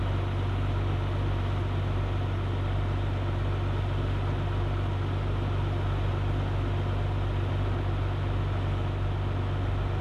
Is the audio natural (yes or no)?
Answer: yes